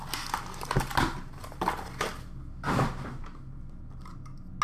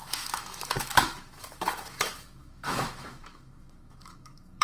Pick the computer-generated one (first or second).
second